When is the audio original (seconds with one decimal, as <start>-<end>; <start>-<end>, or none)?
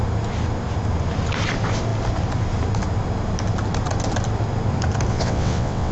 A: 0.0-5.1